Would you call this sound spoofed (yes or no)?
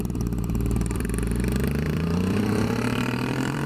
yes